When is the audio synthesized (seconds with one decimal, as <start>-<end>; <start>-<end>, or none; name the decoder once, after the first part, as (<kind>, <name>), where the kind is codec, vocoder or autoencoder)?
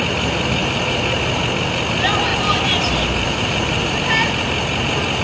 0.6-1.4 (vocoder, BigVGAN v2); 2.3-3.9